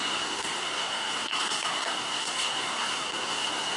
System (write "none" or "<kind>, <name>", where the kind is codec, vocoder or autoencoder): codec, SNAC